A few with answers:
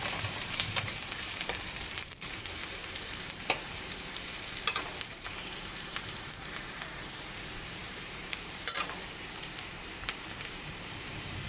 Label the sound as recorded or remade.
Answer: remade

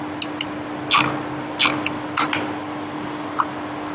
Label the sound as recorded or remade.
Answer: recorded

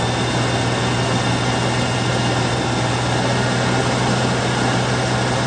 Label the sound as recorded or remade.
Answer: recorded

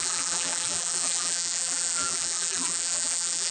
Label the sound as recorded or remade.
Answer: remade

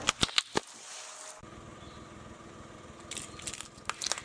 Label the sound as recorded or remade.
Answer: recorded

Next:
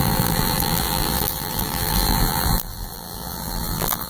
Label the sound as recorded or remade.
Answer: remade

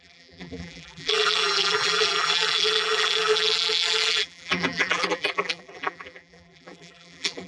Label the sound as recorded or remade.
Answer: remade